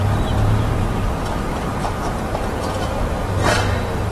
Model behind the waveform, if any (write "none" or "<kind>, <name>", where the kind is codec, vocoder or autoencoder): vocoder, BigVGAN v2